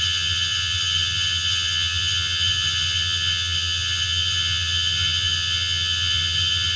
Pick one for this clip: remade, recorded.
remade